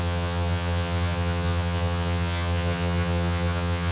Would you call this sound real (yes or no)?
no